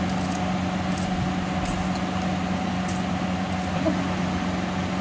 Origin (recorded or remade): recorded